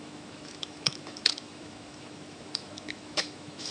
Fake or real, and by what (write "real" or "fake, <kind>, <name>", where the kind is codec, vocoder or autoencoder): fake, autoencoder, DAC-VAE